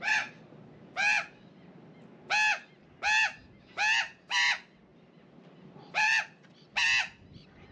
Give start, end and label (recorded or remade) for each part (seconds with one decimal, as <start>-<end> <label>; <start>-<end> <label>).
0.0-4.9 recorded; 4.9-6.2 remade; 6.2-7.7 recorded